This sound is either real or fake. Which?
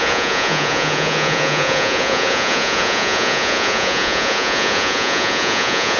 fake